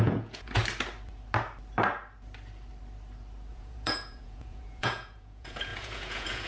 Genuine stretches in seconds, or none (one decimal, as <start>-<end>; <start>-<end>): 0.6-3.5